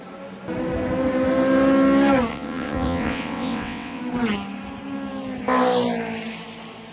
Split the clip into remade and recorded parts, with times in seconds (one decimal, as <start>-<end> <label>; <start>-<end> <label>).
0.0-2.3 recorded; 2.3-4.0 remade; 4.0-6.9 recorded